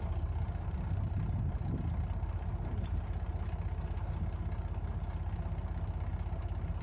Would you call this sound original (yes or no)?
yes